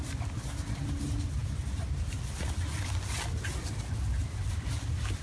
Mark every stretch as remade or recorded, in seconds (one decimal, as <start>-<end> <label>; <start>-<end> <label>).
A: 0.0-5.2 recorded